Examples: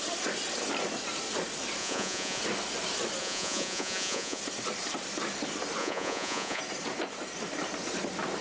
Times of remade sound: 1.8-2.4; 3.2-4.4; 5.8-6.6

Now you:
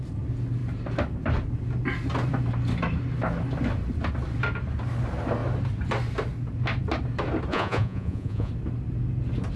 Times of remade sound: 7.5-8.5

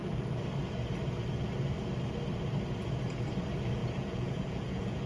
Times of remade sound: 3.8-5.1

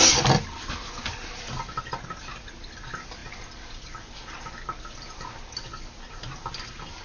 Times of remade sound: none

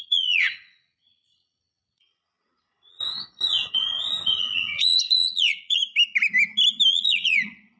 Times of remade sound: 0.0-5.8; 6.9-7.8

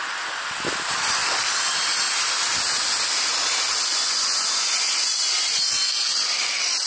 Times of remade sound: 3.9-5.1

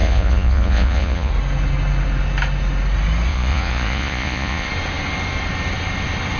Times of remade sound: 0.0-1.3; 3.3-4.7